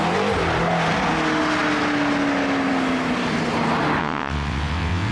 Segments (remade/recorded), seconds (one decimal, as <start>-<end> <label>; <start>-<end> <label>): 0.0-4.0 recorded; 4.0-5.1 remade